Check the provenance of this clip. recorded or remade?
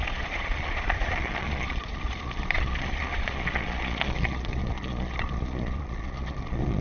remade